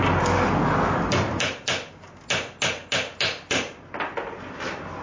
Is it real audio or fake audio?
real